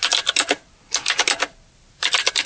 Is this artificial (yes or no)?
yes